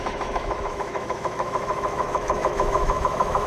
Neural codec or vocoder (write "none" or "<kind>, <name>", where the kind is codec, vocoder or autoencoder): autoencoder, DAC-VAE